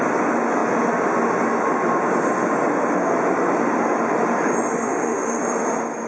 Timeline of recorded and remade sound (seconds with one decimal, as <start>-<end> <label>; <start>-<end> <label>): 0.0-4.7 recorded; 4.7-5.4 remade; 5.4-6.1 recorded